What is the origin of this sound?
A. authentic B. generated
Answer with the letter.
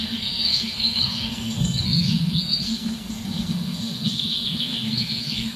B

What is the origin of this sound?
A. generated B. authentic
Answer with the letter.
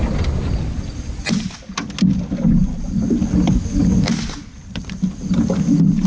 B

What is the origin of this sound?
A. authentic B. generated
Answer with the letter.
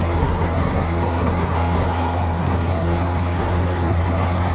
B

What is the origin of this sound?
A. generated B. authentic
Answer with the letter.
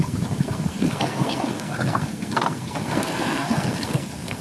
A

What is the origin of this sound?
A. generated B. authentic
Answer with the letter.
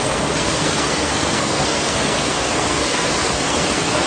A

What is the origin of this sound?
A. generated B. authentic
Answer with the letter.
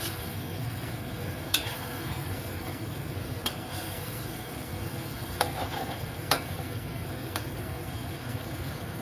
A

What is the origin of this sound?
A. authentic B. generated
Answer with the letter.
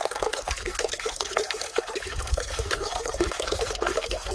B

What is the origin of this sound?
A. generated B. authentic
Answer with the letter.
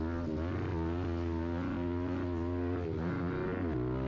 B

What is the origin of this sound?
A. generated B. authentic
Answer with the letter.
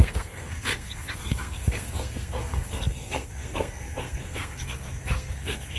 A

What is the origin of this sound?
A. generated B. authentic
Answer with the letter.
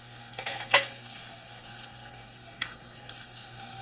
A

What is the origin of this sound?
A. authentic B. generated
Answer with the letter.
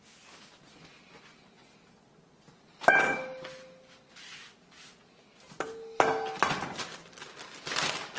A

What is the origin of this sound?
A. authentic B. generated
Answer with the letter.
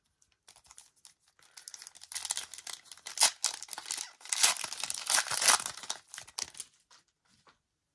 A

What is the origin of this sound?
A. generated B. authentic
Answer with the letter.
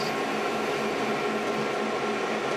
B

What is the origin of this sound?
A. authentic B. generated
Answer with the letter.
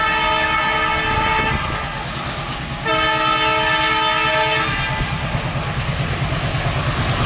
A